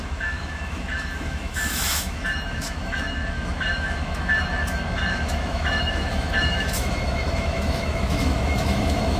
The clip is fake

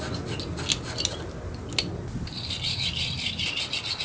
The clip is real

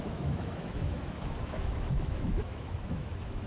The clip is fake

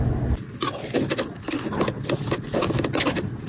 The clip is real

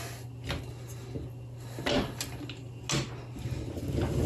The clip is real